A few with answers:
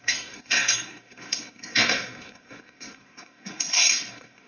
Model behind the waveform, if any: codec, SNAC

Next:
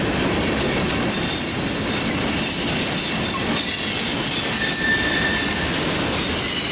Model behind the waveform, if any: none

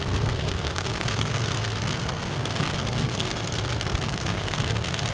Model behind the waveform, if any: codec, SNAC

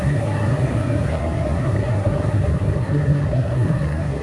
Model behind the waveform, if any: codec, SNAC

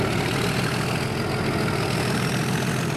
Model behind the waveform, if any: none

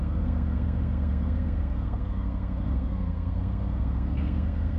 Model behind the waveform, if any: codec, SNAC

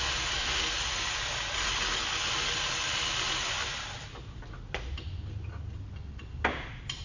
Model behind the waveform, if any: none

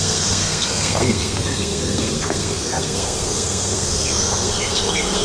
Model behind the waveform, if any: codec, SNAC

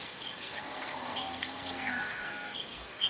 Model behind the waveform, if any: codec, SNAC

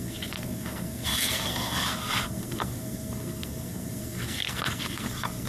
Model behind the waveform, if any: codec, SNAC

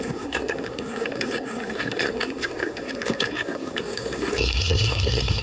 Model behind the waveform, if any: codec, SNAC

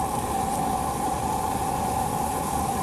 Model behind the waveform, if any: none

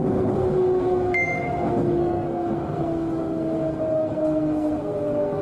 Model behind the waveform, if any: codec, SNAC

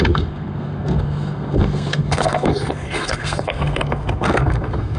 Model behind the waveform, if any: codec, SNAC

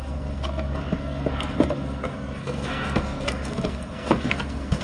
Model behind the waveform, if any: codec, SNAC